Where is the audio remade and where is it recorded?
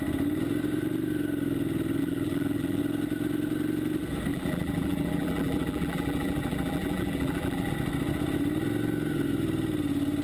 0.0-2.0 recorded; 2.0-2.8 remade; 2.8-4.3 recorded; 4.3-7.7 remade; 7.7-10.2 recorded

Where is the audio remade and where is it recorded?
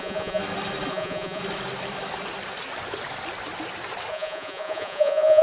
0.0-0.4 remade; 0.4-0.9 recorded; 0.9-1.4 remade; 1.4-4.1 recorded; 4.1-5.4 remade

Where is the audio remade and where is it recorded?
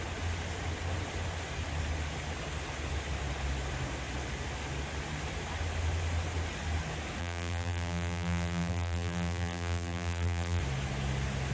0.0-7.2 recorded; 7.2-10.6 remade; 10.6-11.5 recorded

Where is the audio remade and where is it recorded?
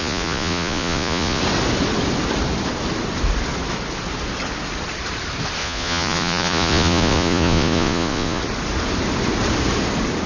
0.0-1.4 remade; 1.4-5.6 recorded; 5.6-8.4 remade; 8.4-10.3 recorded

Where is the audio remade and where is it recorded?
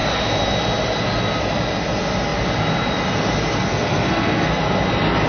0.0-3.7 recorded; 3.7-4.6 remade; 4.6-5.3 recorded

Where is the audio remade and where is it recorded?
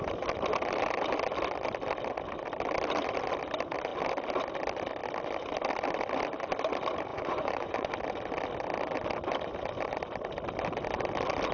0.0-7.1 recorded; 7.1-7.9 remade; 7.9-11.5 recorded